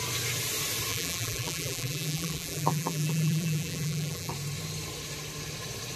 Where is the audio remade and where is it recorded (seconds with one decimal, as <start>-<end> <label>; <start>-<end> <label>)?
0.0-0.9 recorded; 0.9-4.3 remade; 4.3-6.0 recorded